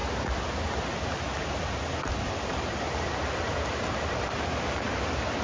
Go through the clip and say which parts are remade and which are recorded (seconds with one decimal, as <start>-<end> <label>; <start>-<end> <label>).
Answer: 0.0-5.4 recorded